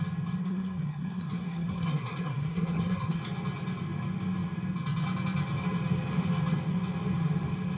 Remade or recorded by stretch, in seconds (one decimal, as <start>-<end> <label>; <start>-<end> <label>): 0.0-0.4 recorded; 0.4-3.2 remade; 3.2-7.8 recorded